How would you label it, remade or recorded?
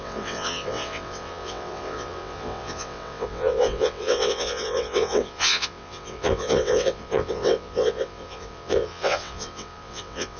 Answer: remade